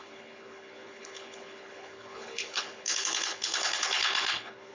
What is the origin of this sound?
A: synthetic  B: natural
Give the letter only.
A